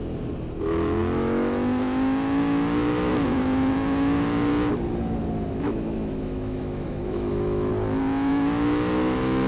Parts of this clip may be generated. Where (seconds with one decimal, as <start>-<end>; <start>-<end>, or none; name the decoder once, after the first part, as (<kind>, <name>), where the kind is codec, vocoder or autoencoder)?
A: 0.6-4.5 (autoencoder, DAC-VAE); 5.5-7.7; 8.3-9.5

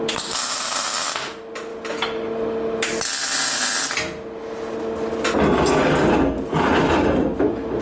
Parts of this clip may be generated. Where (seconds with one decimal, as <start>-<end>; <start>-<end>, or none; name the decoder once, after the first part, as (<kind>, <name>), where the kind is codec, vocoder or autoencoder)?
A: none

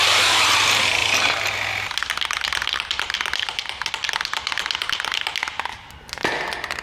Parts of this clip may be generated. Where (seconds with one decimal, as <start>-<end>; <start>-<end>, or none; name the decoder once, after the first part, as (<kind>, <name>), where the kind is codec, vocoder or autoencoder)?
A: none

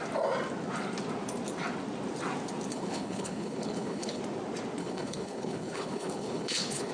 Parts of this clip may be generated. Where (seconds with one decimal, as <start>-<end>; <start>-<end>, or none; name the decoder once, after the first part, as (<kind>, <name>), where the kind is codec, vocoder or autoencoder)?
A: 2.7-4.2 (codec, HILCodec); 4.8-6.9

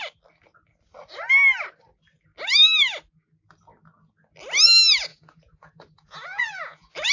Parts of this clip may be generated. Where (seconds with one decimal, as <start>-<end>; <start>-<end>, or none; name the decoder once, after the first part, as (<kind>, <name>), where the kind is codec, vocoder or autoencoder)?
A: 5.1-7.1 (vocoder, Vocos)

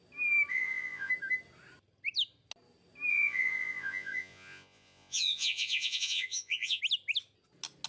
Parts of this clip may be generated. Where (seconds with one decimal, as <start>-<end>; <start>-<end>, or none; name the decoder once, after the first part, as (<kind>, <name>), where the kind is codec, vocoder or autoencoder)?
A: 0.5-1.1 (vocoder, Vocos); 3.1-6.8

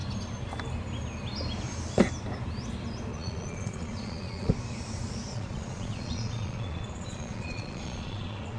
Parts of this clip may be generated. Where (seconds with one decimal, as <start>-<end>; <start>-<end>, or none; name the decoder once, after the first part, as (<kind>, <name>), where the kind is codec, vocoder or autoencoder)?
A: 3.1-4.5 (vocoder, Vocos); 5.3-8.6

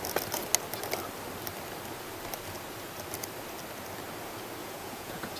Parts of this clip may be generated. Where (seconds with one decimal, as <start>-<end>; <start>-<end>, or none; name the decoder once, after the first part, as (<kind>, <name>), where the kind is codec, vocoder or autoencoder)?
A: 4.6-5.4 (vocoder, Vocos)